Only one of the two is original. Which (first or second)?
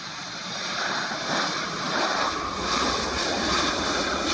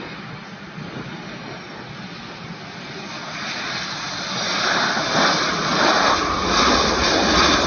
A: second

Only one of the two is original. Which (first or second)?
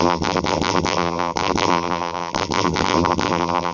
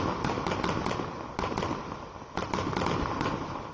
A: second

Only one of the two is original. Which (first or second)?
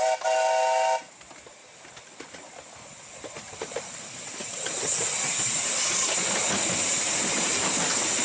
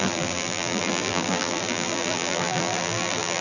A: first